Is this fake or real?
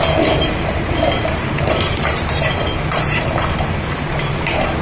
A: fake